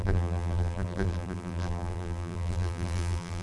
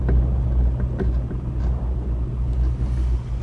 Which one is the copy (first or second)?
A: first